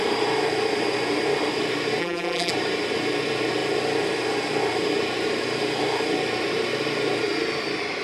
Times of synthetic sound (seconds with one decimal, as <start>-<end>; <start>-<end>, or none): 2.0-2.5